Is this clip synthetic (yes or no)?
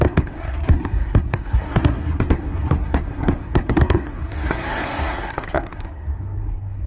yes